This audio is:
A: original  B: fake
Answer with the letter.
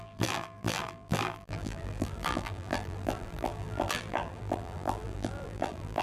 B